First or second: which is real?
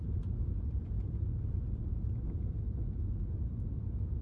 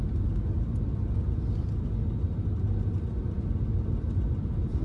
second